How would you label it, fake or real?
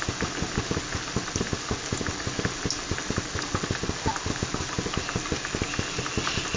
real